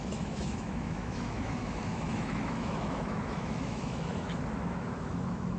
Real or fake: fake